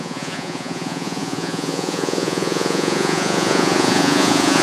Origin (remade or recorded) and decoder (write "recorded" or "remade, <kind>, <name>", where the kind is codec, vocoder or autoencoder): remade, vocoder, Vocos